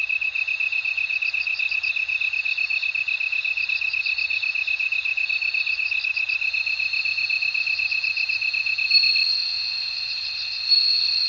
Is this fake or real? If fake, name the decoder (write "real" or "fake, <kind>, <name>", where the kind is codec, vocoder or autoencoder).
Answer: real